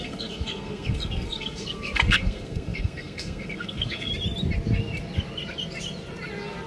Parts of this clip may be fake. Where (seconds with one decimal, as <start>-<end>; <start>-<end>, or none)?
0.0-4.1